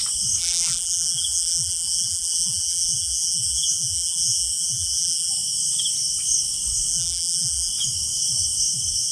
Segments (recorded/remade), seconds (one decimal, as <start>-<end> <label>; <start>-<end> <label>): 0.0-0.4 recorded; 0.4-5.3 remade; 5.3-6.9 recorded; 6.9-7.7 remade; 7.7-9.1 recorded

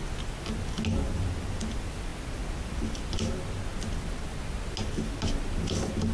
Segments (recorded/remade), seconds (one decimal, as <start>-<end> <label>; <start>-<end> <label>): 0.0-6.1 recorded

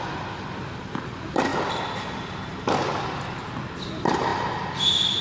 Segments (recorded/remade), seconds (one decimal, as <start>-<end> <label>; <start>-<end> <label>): 0.0-5.2 recorded

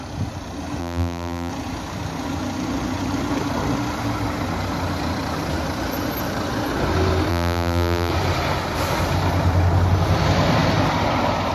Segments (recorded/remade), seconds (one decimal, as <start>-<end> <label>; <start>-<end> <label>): 0.0-0.8 recorded; 0.8-1.5 remade; 1.5-7.3 recorded; 7.3-8.1 remade; 8.1-11.5 recorded

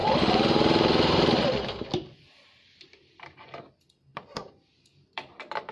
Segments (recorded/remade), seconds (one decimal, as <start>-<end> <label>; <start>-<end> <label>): 0.0-1.9 remade; 1.9-4.1 recorded; 4.1-5.7 remade

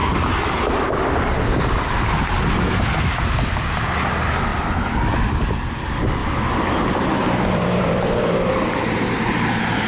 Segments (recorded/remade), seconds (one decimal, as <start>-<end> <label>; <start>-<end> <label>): 0.0-2.4 remade; 2.4-4.5 recorded; 4.5-5.4 remade; 5.4-6.2 recorded; 6.2-8.5 remade; 8.5-9.9 recorded